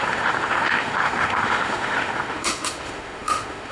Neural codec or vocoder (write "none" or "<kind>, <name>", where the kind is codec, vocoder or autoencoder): autoencoder, DAC-VAE